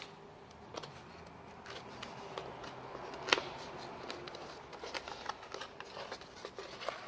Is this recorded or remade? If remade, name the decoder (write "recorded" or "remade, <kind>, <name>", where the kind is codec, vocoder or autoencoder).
recorded